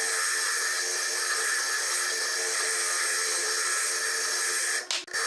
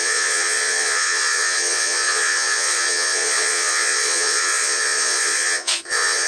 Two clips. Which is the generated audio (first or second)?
second